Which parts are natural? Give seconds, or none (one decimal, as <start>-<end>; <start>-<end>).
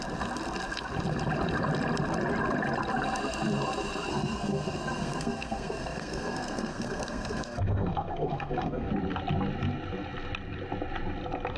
0.0-4.1; 8.9-11.6